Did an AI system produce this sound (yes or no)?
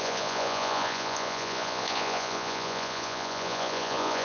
yes